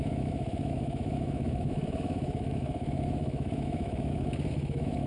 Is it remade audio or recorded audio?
remade